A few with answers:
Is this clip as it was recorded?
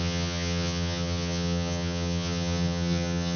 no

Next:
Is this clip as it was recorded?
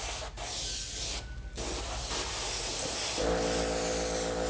yes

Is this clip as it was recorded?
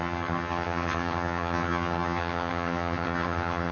no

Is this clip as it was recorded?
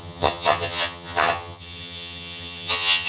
no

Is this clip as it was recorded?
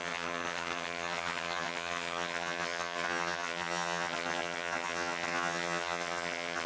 no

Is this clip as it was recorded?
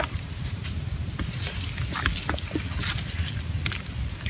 yes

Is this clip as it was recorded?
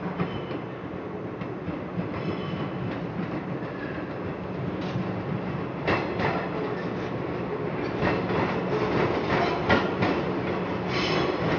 yes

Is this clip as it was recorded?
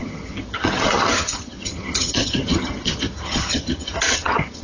no